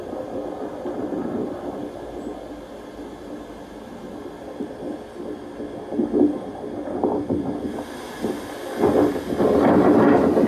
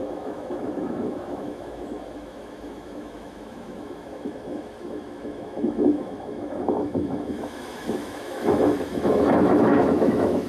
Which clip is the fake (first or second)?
second